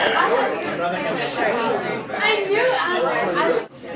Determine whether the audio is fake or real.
real